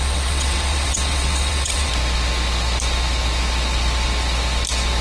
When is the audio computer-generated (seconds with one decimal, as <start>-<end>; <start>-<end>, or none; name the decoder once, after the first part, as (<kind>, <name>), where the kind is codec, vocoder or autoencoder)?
0.0-1.9 (vocoder, WaveNeXt)